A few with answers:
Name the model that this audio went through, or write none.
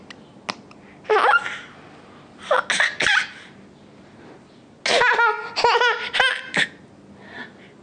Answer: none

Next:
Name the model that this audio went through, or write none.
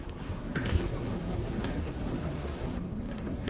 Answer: codec, SNAC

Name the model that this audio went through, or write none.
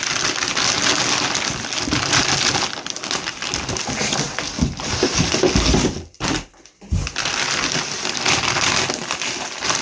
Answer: none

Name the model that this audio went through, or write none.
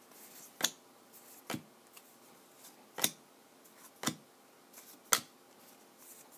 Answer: none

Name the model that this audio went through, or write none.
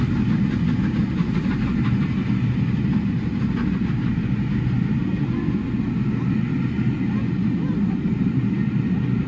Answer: none